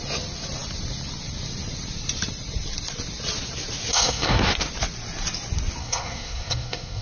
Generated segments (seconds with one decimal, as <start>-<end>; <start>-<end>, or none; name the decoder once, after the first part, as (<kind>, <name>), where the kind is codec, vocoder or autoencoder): 3.9-4.5 (codec, SNAC); 5.8-7.0